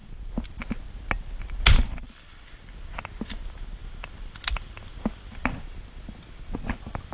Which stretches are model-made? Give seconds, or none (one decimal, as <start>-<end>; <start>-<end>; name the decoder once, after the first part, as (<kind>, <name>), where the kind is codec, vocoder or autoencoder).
none